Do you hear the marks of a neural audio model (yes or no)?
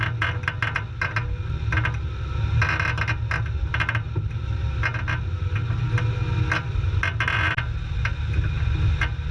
no